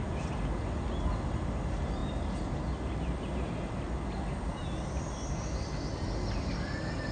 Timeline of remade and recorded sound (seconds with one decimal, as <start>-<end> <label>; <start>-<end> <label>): 0.0-7.1 recorded